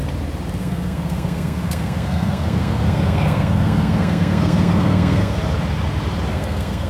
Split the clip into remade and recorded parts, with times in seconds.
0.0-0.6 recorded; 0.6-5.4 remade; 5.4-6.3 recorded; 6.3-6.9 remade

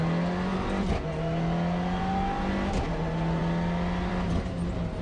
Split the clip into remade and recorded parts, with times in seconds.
0.0-5.0 recorded